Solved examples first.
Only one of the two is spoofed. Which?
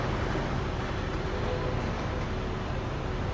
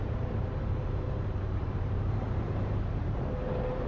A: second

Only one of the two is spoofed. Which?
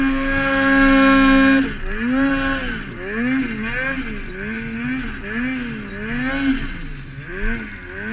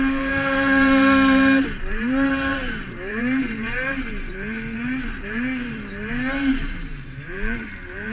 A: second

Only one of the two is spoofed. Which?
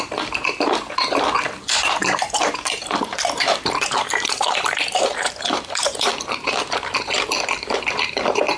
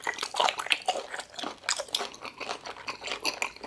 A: first